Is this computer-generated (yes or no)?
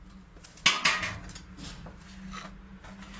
no